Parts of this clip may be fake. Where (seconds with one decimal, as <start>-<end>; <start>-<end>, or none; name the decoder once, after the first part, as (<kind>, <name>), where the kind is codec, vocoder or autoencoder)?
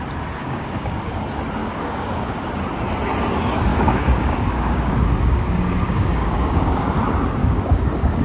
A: 0.4-1.2 (codec, DAC); 1.6-2.5; 3.7-7.0; 7.4-8.2